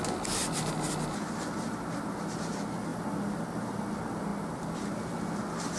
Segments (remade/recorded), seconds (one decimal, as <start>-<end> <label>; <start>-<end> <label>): 0.0-5.8 recorded